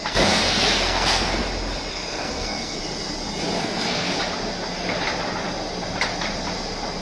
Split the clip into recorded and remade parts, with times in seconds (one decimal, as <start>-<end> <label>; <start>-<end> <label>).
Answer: 0.0-1.4 remade; 1.4-1.9 recorded; 1.9-2.8 remade; 2.8-3.6 recorded; 3.6-4.1 remade; 4.1-7.0 recorded